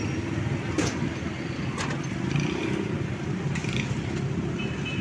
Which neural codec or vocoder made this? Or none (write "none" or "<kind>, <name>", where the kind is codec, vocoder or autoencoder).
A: none